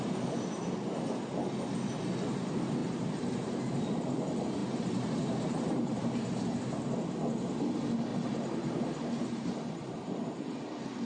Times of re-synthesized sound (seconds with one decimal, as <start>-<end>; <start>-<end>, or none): 2.8-3.6; 4.6-6.6; 8.1-10.4